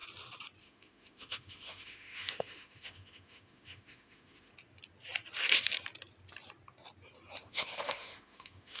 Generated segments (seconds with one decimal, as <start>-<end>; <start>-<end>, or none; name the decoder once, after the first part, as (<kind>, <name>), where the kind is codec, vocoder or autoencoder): 0.6-4.5 (autoencoder, DAC-VAE); 7.4-8.8